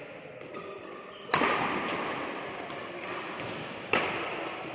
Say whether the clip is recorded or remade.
recorded